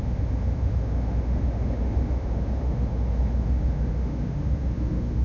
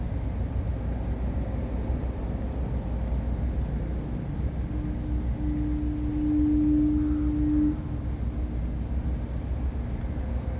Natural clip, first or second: second